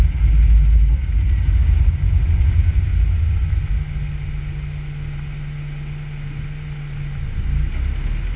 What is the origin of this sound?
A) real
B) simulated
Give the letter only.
A